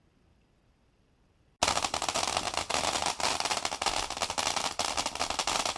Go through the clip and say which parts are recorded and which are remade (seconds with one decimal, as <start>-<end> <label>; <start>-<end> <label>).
0.0-5.8 recorded